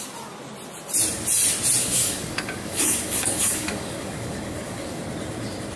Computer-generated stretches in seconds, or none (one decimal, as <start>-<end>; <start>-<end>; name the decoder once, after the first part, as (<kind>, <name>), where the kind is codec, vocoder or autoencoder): 1.8-5.0 (codec, DAC)